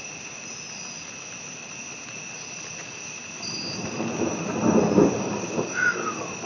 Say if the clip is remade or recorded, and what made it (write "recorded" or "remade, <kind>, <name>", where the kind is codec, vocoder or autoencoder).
recorded